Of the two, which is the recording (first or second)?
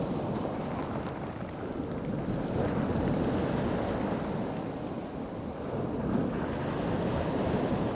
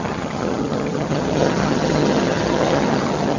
first